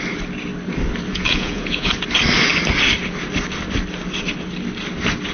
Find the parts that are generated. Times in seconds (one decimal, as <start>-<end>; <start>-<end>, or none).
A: 1.1-1.9